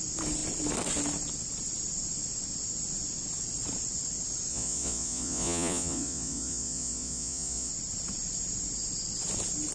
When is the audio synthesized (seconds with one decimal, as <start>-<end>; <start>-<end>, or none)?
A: 4.5-7.7